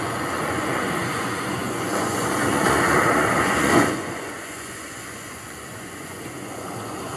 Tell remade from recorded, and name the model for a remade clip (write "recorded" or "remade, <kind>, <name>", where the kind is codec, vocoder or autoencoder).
remade, vocoder, Vocos